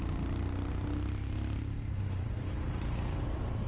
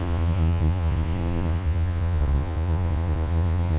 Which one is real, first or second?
first